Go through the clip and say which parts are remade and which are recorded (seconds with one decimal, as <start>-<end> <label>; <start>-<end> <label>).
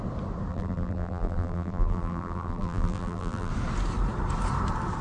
0.0-0.5 recorded; 0.5-3.5 remade; 3.5-5.0 recorded